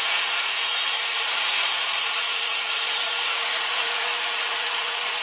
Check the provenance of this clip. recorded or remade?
remade